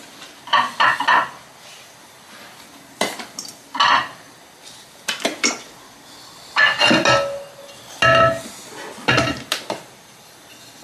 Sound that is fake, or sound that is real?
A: real